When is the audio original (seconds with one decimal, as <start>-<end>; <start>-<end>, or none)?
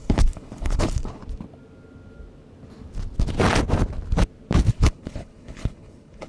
1.2-4.7